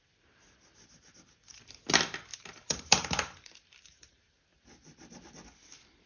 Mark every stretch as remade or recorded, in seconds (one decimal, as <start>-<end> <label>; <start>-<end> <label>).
0.0-2.3 recorded; 2.3-4.4 remade; 4.4-6.1 recorded